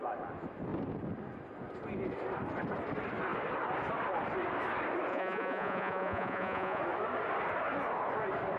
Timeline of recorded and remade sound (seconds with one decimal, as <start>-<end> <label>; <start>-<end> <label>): 0.0-5.1 recorded; 5.1-6.8 remade; 6.8-8.6 recorded